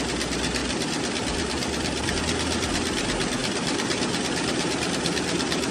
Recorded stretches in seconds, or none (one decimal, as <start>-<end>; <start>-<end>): 0.0-0.6; 2.1-3.4; 4.8-5.7